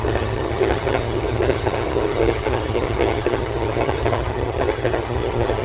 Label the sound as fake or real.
fake